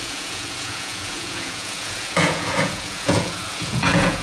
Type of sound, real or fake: fake